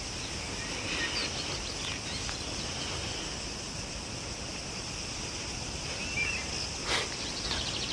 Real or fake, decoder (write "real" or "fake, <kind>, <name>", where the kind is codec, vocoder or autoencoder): real